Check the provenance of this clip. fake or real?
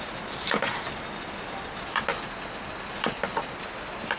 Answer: real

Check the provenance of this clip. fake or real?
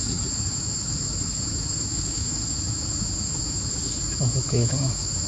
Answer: fake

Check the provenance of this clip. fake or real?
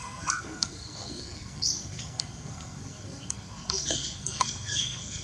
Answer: fake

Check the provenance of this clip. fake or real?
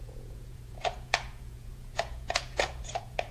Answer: fake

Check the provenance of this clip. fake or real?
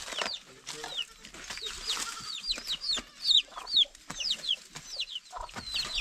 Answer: real